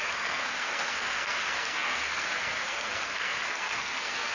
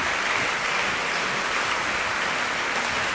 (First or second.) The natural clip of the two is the second